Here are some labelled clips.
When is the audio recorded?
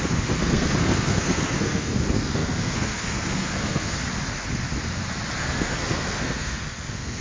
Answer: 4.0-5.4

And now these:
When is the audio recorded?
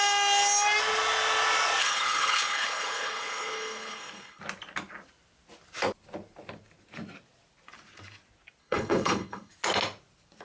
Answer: 0.0-1.8; 4.4-8.6; 9.5-10.4